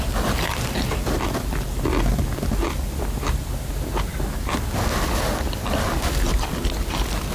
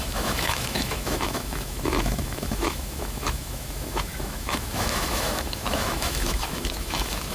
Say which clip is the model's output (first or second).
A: second